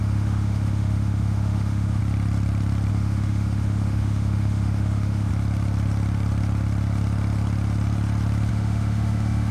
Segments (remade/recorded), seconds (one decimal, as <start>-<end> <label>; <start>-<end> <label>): 0.0-2.0 remade; 2.0-2.9 recorded; 2.9-5.3 remade; 5.3-8.5 recorded; 8.5-9.5 remade